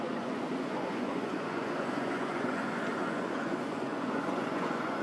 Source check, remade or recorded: remade